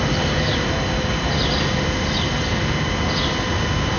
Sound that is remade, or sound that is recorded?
recorded